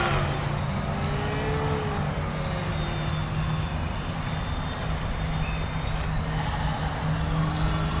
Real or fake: real